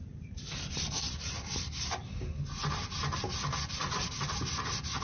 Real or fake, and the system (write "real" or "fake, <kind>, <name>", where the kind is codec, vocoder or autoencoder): real